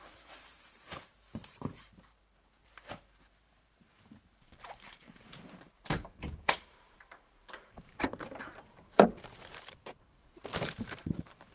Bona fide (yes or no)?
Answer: no